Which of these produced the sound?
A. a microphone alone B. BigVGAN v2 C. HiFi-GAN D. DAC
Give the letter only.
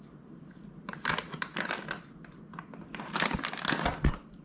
A